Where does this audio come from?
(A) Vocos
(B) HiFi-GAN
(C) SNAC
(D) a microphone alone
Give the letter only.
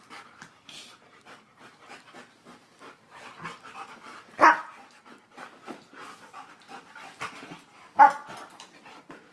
D